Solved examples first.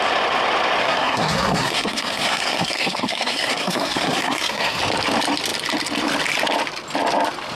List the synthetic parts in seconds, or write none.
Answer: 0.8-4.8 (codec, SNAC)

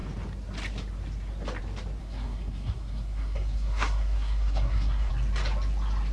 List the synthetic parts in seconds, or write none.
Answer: 2.0-5.1 (codec, SNAC)

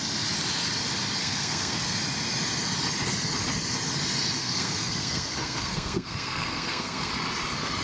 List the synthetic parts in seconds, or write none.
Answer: 1.2-2.0 (codec, SNAC); 4.4-7.1